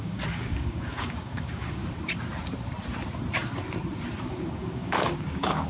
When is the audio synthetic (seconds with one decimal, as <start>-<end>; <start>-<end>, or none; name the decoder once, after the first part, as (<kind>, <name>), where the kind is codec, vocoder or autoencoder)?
0.0-1.8 (codec, DAC); 4.3-5.7